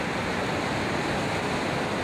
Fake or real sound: fake